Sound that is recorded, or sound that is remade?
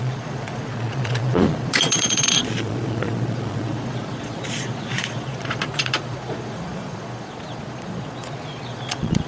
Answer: remade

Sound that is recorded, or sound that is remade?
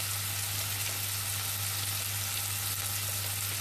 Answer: recorded